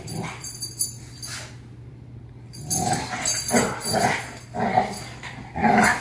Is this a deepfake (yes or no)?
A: no